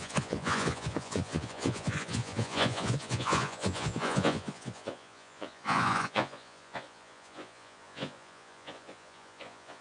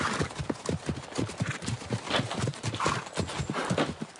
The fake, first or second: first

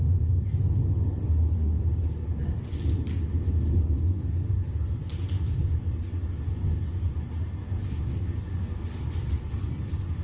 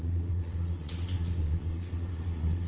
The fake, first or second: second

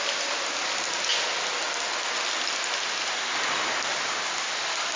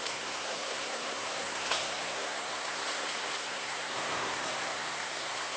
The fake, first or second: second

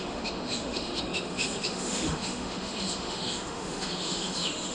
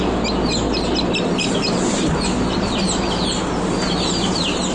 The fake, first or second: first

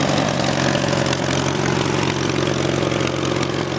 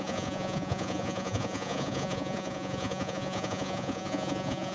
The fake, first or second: second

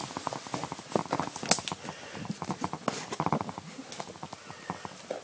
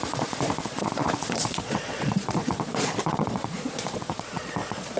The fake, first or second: second